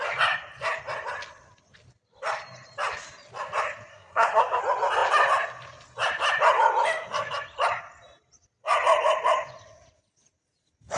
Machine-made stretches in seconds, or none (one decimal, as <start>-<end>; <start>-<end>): 3.9-4.6